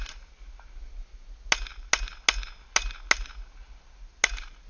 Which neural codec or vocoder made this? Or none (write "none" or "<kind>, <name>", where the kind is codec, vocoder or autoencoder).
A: none